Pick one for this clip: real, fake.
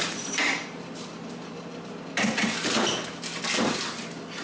real